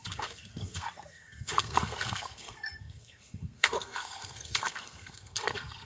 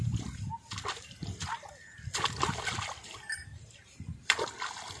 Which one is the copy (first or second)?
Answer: first